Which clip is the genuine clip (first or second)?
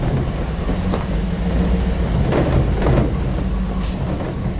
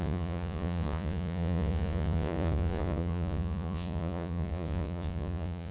first